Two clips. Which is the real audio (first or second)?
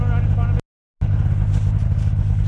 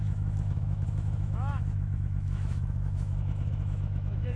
first